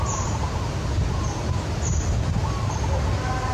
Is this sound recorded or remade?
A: remade